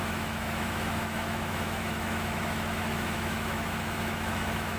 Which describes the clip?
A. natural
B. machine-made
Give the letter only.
B